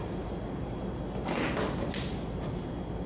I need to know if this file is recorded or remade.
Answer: recorded